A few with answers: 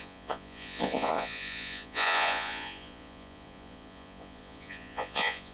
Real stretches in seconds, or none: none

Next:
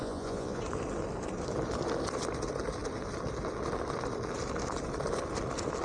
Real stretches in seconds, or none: 0.6-5.8